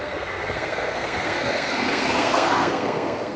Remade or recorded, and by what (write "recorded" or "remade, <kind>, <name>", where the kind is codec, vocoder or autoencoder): remade, codec, SNAC